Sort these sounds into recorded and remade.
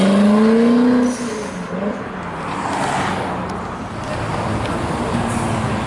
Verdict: recorded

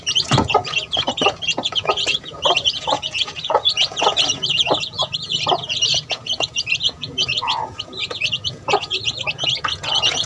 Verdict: remade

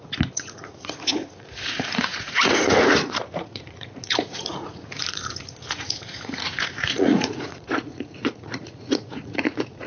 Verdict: remade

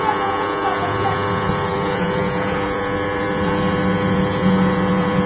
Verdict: remade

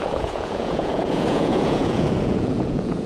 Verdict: remade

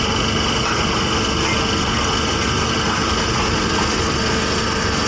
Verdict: recorded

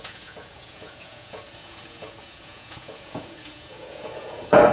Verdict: remade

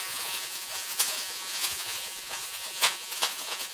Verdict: remade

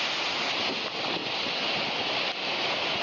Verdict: recorded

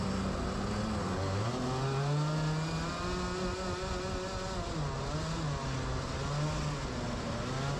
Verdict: recorded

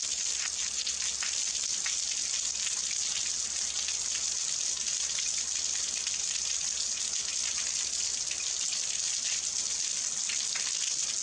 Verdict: recorded